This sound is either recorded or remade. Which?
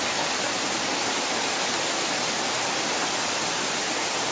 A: recorded